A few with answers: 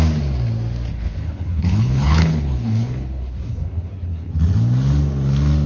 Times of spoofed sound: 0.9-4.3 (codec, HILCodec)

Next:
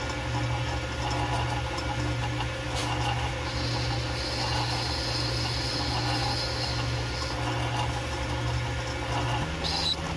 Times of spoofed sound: none

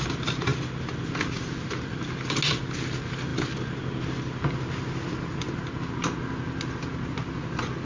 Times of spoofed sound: none

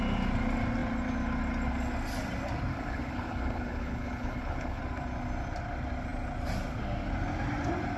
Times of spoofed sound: 2.7-4.8 (codec, HILCodec)

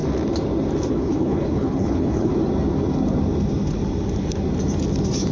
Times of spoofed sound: 0.9-2.3 (codec, HILCodec)

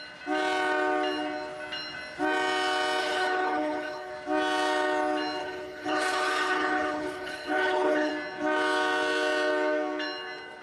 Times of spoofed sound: 3.0-4.1 (codec, HILCodec); 5.4-8.1